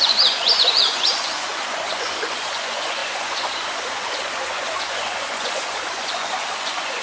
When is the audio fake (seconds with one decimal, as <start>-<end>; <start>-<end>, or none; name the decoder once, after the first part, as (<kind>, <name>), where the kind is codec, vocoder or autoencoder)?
0.0-7.0 (vocoder, Vocos)